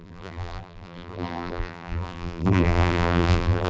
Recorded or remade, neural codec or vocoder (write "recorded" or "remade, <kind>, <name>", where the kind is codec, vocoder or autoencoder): remade, vocoder, BigVGAN v2